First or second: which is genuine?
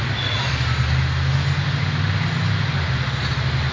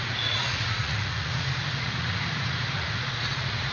first